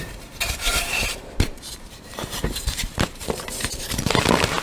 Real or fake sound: fake